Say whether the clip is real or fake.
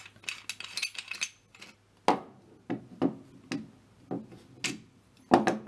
real